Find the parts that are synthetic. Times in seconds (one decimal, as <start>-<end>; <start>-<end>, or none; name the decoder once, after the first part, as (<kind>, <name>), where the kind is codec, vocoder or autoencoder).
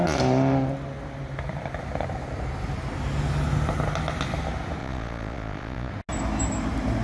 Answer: 4.8-5.9 (vocoder, Vocos)